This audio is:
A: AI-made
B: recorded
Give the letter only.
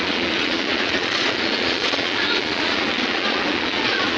A